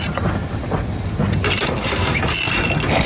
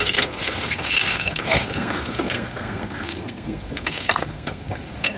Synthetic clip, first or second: second